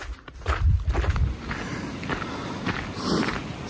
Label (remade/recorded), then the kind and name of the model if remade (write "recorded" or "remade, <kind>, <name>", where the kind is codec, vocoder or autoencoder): recorded